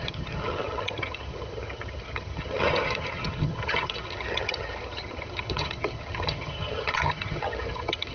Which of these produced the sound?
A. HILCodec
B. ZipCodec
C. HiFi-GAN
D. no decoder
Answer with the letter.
C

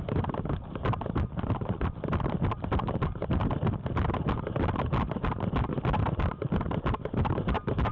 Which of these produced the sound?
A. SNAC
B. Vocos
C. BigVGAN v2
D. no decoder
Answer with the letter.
D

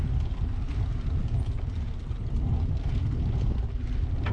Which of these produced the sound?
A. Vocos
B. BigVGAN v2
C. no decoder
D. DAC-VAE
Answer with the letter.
C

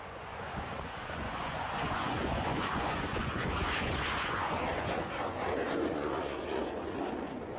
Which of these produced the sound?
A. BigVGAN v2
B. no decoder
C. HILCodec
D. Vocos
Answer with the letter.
D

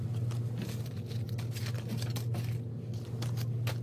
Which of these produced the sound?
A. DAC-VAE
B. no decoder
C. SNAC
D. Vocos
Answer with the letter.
B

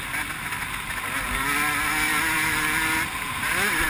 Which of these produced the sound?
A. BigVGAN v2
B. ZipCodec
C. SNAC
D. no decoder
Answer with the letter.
D